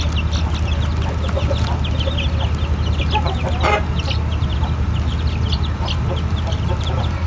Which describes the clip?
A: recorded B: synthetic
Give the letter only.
A